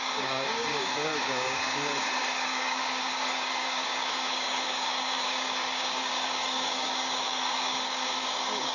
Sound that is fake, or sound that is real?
fake